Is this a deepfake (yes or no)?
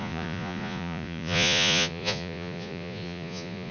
yes